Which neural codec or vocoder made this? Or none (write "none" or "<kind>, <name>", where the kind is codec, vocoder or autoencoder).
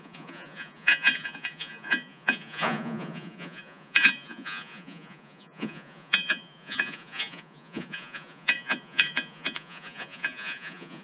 vocoder, Vocos